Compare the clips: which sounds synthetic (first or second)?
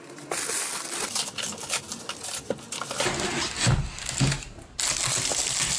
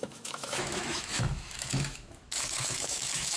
second